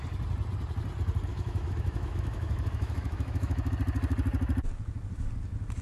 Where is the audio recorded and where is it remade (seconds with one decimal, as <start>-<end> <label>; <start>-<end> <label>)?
0.0-1.3 recorded; 1.3-3.7 remade; 3.7-5.8 recorded